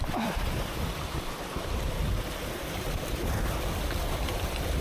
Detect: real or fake real